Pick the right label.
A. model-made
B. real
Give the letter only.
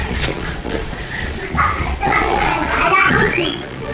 A